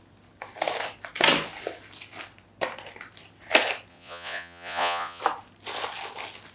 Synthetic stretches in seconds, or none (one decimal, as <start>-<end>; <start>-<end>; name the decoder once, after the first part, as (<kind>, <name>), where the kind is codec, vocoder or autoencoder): 3.9-5.2 (vocoder, Vocos)